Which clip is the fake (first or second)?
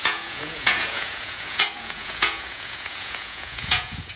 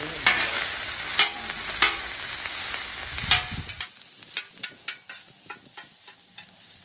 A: first